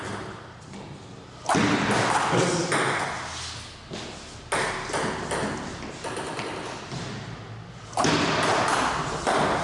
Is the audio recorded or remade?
recorded